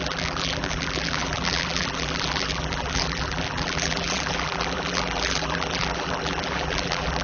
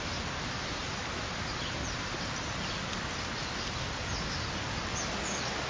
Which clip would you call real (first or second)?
second